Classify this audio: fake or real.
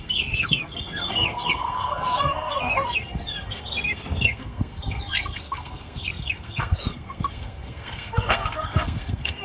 fake